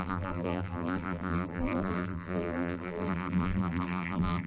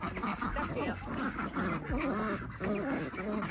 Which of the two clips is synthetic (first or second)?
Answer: first